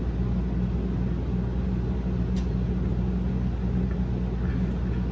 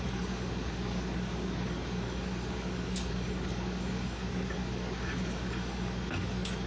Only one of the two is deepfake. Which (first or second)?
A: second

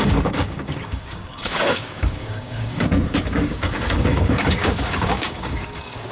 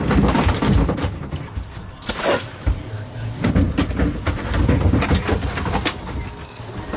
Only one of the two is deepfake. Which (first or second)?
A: first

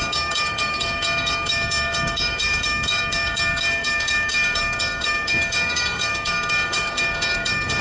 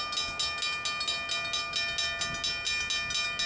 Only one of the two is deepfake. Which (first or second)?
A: first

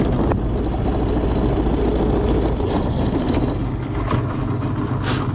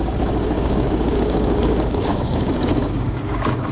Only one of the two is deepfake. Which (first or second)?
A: second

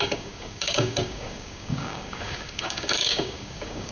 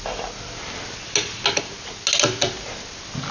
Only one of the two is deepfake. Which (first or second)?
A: first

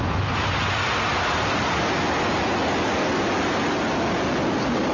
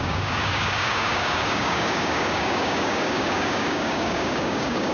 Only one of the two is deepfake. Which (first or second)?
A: second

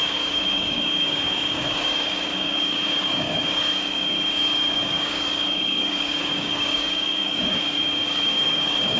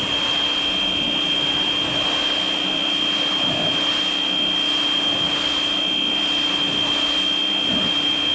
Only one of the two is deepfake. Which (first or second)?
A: first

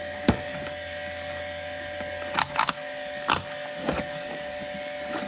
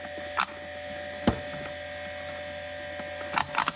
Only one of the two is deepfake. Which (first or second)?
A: first